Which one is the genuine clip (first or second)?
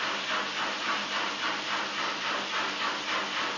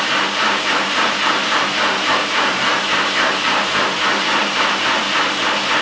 first